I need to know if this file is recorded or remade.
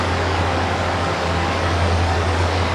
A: remade